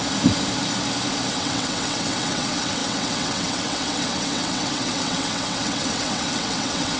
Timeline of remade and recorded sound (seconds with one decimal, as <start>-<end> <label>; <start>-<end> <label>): 0.0-1.3 recorded; 1.3-7.0 remade